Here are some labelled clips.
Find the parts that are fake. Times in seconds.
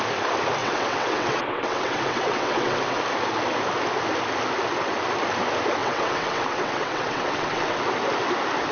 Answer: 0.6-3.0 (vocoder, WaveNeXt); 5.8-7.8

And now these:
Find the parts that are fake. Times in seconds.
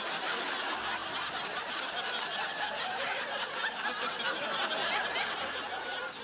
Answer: none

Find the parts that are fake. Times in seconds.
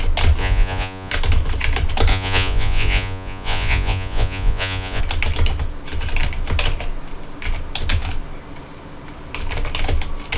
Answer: 0.4-1.1 (vocoder, Vocos); 2.1-5.0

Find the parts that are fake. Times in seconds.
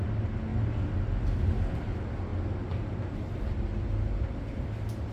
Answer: none